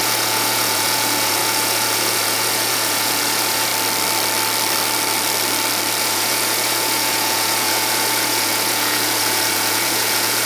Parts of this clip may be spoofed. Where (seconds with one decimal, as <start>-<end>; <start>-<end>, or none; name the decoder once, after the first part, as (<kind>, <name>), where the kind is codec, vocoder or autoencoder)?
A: 0.0-3.7 (vocoder, Vocos); 6.0-10.5